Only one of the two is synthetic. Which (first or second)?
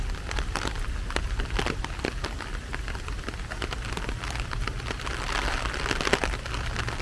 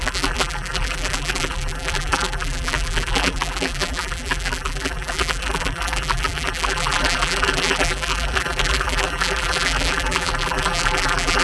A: second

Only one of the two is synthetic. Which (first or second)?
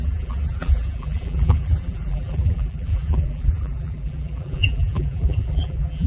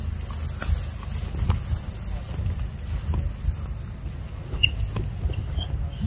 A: first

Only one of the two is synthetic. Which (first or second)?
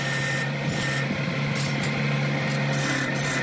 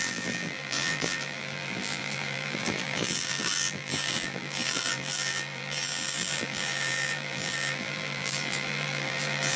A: second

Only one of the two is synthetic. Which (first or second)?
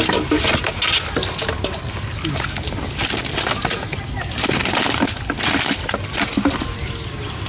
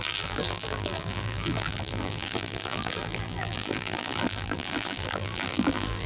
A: second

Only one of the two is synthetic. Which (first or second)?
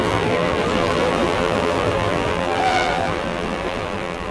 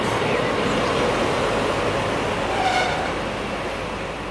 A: first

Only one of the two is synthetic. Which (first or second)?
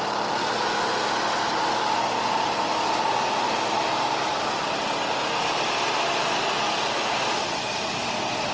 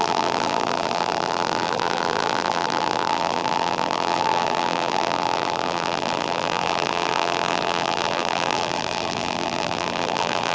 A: second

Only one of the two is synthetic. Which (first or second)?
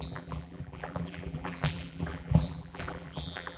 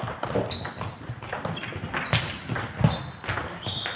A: first